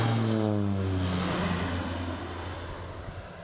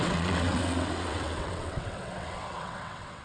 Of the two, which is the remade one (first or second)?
second